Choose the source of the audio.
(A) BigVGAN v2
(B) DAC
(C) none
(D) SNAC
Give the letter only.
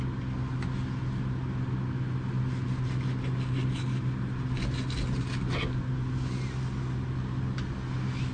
C